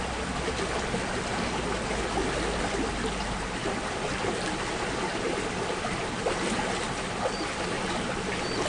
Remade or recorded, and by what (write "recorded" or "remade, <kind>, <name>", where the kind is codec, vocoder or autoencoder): recorded